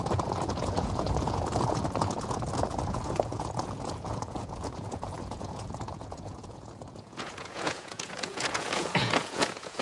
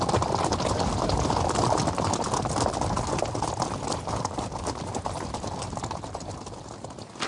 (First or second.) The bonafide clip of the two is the second